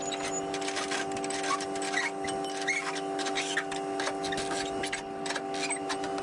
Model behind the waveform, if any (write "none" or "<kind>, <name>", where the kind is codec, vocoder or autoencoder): none